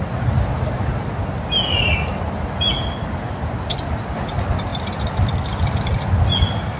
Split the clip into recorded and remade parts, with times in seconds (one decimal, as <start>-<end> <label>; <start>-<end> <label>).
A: 0.0-6.8 recorded